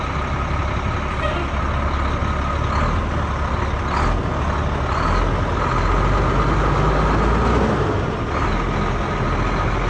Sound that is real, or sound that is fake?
real